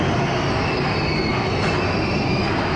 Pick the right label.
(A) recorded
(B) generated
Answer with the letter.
A